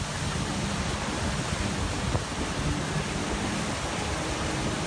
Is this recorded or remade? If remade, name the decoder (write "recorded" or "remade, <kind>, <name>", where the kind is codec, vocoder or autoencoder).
recorded